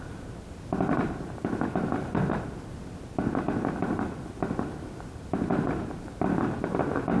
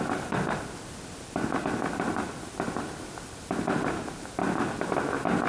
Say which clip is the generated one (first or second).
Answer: first